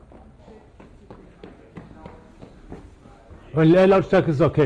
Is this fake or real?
real